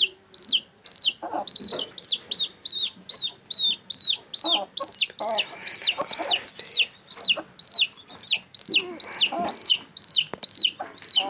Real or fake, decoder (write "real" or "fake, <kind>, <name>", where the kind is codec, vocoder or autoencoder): real